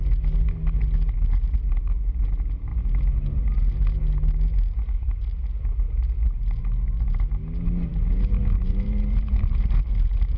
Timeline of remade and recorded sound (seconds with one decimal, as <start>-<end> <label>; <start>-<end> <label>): 0.0-7.9 recorded; 7.9-9.8 remade; 9.8-10.4 recorded